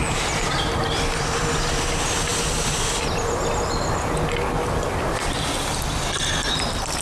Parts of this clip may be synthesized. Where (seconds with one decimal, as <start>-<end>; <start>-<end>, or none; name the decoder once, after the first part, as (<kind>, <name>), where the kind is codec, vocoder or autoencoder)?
none